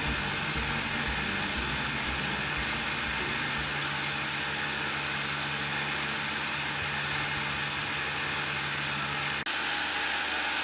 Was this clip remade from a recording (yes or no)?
no